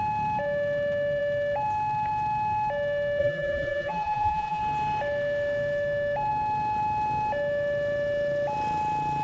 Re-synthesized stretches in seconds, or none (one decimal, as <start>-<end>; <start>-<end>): 3.2-4.6